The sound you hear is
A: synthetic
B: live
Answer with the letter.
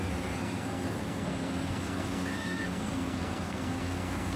A